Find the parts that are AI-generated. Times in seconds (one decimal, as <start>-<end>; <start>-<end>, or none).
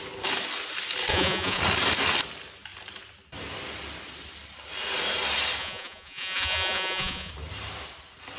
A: 1.1-1.6; 5.6-7.3